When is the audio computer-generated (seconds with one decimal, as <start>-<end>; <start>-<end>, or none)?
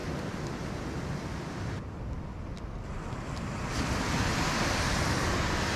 none